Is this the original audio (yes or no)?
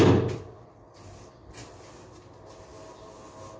yes